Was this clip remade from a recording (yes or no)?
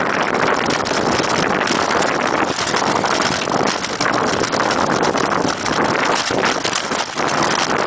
no